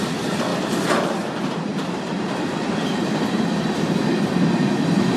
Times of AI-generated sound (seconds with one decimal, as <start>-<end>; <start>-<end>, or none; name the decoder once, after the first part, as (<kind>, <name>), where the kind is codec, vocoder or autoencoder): none